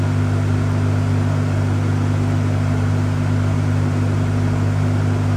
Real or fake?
real